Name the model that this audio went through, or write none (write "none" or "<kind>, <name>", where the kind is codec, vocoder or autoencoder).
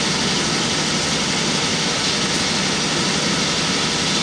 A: none